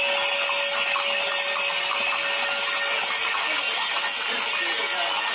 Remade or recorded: recorded